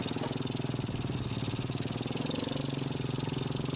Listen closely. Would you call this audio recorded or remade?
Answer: recorded